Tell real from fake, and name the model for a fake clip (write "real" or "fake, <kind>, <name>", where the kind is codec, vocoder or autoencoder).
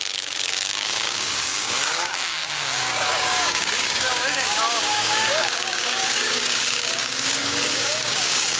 fake, codec, DAC